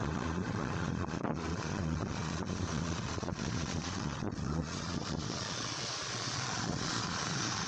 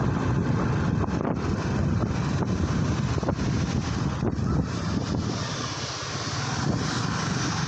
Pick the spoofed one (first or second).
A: first